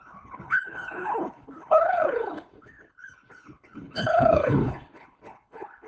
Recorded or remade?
remade